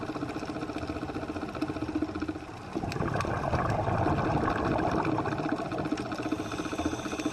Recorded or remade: recorded